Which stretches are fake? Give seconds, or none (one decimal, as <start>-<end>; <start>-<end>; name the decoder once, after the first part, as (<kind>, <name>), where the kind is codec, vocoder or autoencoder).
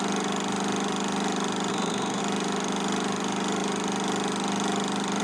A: 1.7-2.2 (codec, SNAC)